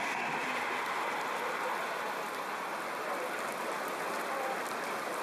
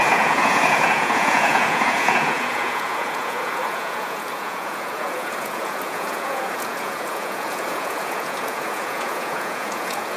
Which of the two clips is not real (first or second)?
second